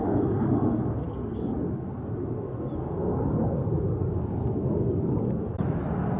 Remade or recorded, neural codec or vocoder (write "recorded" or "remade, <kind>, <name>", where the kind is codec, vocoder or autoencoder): recorded